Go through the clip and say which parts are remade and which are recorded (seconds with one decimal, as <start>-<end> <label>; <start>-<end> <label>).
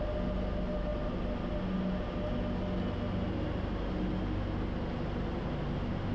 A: 0.0-6.1 recorded